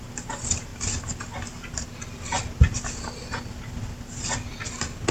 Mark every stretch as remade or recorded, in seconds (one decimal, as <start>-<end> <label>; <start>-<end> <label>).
0.0-5.1 recorded